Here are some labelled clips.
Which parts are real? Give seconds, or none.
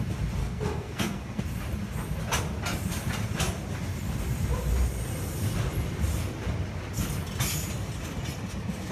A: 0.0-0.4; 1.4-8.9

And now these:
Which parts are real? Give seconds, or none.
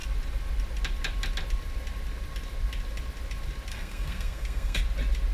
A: 0.0-3.7; 4.8-5.3